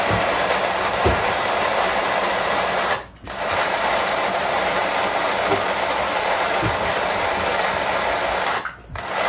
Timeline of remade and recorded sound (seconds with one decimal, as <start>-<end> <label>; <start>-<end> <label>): 0.0-4.8 remade; 4.8-9.3 recorded